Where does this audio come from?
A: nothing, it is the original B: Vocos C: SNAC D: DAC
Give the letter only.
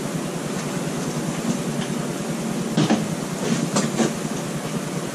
A